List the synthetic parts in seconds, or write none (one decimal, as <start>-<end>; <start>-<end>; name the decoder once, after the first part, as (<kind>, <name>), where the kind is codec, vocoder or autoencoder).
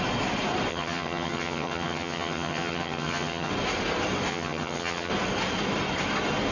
0.7-3.5 (vocoder, HiFi-GAN); 4.3-5.1